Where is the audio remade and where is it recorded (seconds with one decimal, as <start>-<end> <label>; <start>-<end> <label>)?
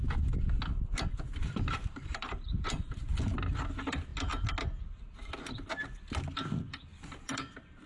0.0-1.4 recorded; 1.4-2.6 remade; 2.6-6.9 recorded; 6.9-7.9 remade